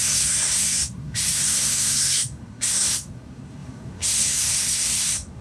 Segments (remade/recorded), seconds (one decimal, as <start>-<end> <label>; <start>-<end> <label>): 0.0-5.4 remade